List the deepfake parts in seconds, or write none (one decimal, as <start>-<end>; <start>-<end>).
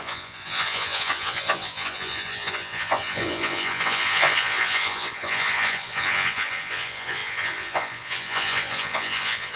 0.0-9.6